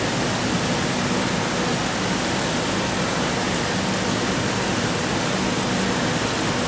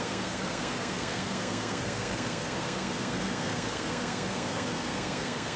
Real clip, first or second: first